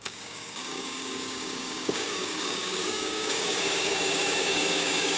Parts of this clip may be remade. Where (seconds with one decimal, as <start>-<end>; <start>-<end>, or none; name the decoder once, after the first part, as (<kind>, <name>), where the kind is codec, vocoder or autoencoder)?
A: 0.0-5.2 (codec, DAC)